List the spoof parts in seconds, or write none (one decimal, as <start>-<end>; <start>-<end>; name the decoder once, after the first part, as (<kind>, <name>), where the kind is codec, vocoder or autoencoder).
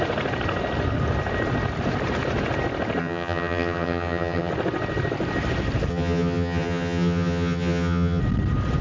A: 3.0-4.5 (vocoder, HiFi-GAN); 5.9-8.2